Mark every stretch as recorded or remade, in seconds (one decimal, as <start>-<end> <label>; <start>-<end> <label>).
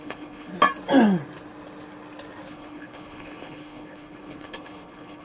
0.0-0.5 remade; 0.5-2.5 recorded; 2.5-5.2 remade